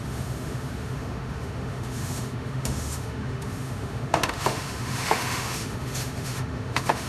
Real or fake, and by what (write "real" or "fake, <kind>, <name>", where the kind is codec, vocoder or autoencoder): fake, autoencoder, DAC-VAE